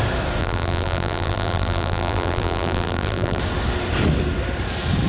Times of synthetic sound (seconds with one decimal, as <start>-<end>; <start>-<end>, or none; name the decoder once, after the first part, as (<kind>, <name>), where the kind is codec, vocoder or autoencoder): 0.4-3.4 (vocoder, BigVGAN v2)